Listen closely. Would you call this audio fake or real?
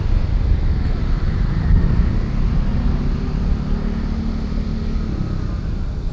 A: real